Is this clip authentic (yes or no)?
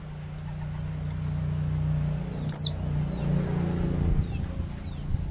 yes